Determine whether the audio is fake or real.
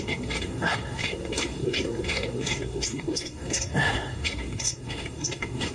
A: fake